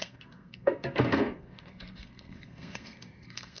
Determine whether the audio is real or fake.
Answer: fake